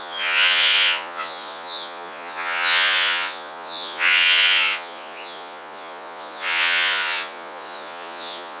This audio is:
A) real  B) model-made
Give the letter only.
B